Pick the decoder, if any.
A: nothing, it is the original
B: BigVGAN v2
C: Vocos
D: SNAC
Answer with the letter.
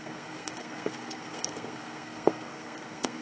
D